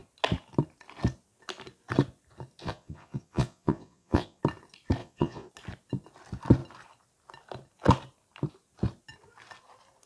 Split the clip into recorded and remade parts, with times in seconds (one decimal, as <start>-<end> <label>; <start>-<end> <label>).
0.0-2.6 recorded; 2.6-4.4 remade; 4.4-5.0 recorded; 5.0-5.5 remade; 5.5-10.1 recorded